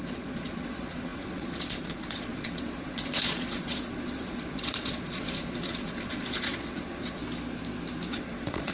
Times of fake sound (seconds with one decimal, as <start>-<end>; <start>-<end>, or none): 0.0-7.2; 8.1-8.7